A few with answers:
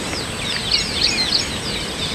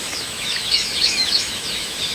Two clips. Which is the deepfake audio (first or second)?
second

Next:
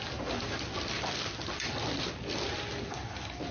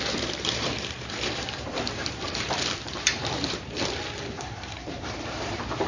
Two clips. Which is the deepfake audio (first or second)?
second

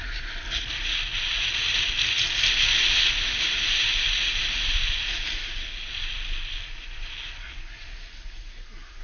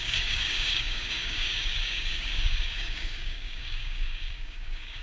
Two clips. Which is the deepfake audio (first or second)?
second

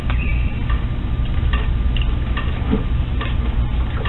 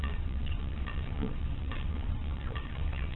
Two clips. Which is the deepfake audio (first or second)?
second